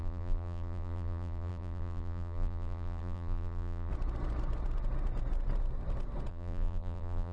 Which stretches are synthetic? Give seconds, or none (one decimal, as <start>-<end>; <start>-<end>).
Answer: 0.0-3.9; 6.3-7.3